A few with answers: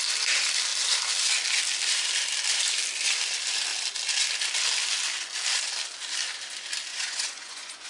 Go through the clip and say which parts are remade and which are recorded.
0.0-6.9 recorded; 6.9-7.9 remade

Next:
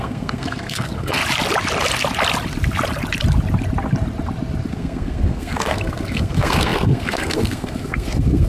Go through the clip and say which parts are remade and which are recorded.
0.0-1.2 remade; 1.2-4.7 recorded; 4.7-8.5 remade

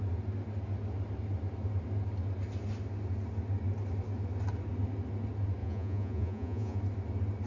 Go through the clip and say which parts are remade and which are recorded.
0.0-5.6 recorded; 5.6-6.8 remade; 6.8-7.5 recorded

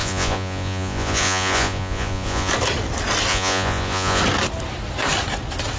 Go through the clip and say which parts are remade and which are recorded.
0.0-2.5 remade; 2.5-3.3 recorded; 3.3-4.2 remade; 4.2-5.8 recorded

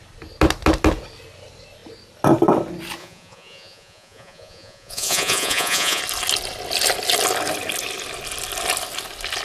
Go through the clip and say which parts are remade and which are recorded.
0.0-3.0 recorded; 3.0-6.0 remade; 6.0-9.4 recorded

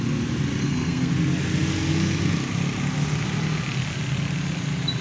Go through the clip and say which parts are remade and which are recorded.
0.0-0.6 recorded; 0.6-1.1 remade; 1.1-5.0 recorded